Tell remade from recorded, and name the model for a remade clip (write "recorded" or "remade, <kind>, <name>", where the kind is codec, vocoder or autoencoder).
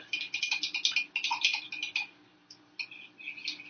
recorded